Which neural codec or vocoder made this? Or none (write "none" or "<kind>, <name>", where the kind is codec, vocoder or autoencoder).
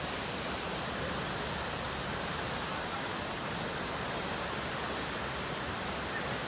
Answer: none